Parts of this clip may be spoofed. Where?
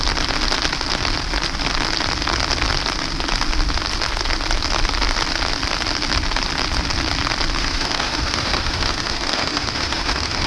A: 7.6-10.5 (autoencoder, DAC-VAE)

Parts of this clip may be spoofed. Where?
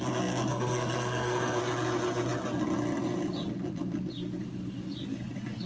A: 0.5-1.6 (codec, SNAC)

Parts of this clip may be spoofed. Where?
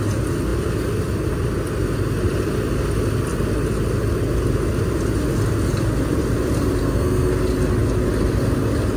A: 6.8-7.3 (codec, SNAC)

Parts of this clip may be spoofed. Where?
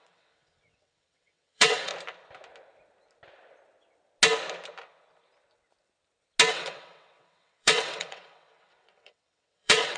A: 0.0-1.9 (vocoder, WaveNeXt); 6.5-10.0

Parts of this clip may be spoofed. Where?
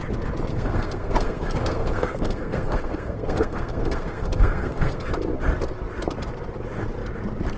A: 0.5-5.1 (codec, SNAC)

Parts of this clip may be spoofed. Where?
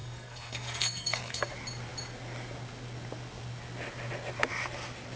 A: 0.0-1.4 (codec, SNAC)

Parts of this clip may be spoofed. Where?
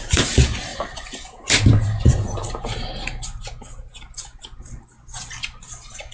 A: none